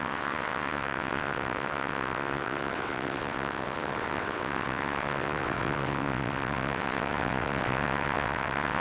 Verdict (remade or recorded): remade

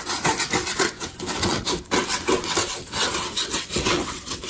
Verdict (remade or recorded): remade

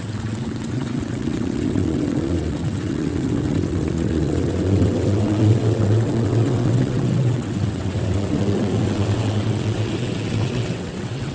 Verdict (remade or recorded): remade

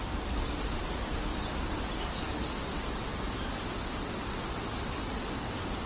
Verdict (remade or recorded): recorded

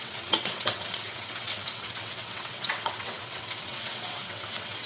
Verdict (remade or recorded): remade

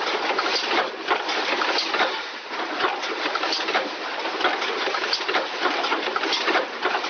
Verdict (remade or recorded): recorded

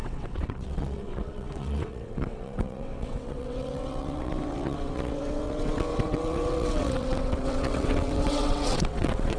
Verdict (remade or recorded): remade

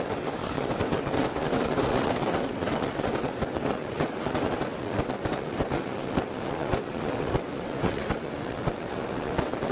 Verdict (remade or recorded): remade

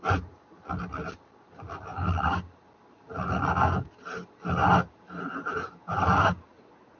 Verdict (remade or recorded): recorded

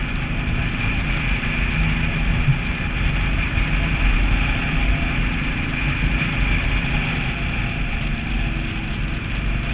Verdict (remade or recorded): recorded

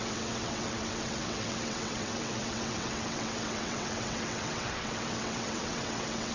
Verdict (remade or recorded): remade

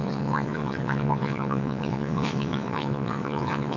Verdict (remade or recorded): remade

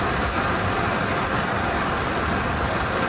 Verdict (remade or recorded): recorded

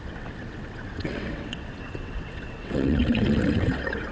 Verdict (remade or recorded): remade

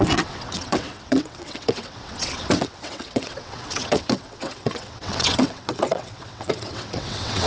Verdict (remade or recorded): remade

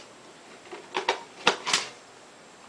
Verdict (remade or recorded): recorded